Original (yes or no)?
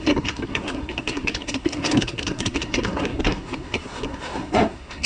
no